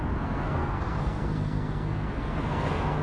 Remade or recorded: remade